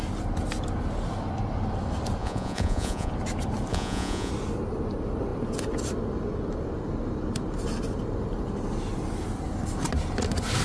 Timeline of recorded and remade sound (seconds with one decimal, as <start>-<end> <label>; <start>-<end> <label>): 0.0-2.2 recorded; 2.2-3.1 remade; 3.1-3.7 recorded; 3.7-4.3 remade; 4.3-10.6 recorded